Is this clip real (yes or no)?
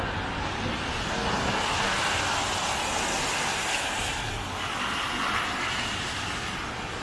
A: yes